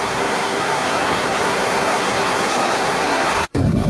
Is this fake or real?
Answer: fake